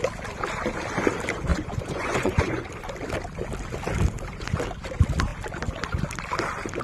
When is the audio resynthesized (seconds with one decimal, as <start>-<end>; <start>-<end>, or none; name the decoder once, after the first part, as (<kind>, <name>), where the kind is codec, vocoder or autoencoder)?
1.5-2.7 (vocoder, Vocos)